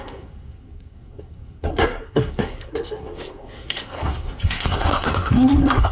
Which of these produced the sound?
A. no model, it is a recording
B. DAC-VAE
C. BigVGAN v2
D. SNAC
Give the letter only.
D